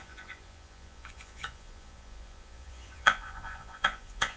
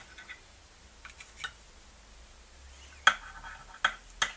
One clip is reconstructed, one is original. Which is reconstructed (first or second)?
first